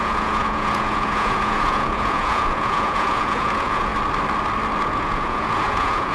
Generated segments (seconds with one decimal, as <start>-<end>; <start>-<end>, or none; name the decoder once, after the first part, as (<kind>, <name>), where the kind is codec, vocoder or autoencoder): 0.0-3.9 (vocoder, Vocos); 4.8-6.1